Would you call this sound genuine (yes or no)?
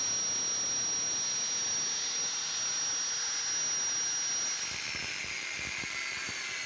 yes